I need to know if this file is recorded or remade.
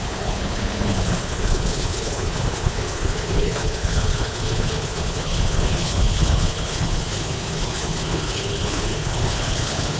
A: remade